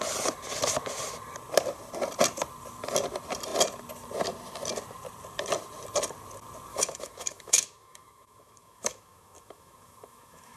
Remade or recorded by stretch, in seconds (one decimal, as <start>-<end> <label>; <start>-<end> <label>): 0.0-6.7 recorded; 6.7-10.6 remade